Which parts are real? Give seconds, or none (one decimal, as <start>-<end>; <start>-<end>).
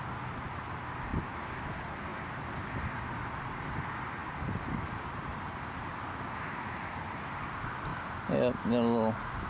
0.0-9.5